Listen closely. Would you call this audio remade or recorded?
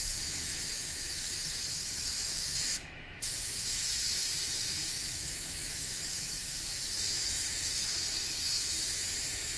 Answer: remade